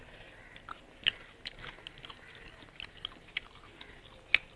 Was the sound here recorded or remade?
recorded